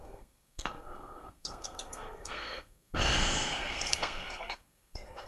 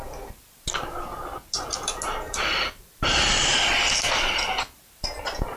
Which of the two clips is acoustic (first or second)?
second